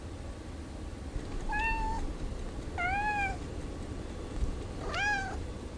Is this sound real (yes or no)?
yes